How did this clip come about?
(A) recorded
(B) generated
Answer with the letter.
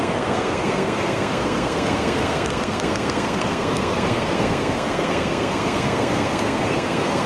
B